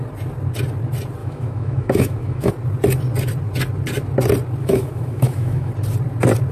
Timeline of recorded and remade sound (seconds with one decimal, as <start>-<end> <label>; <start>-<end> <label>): 0.0-1.2 recorded; 1.2-2.5 remade; 2.5-4.6 recorded; 4.6-5.7 remade; 5.7-6.5 recorded